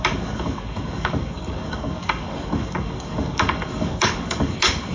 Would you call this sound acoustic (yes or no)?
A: no